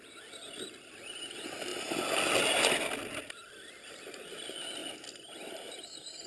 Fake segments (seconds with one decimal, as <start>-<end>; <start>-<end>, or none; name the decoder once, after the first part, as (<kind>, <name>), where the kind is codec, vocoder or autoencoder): none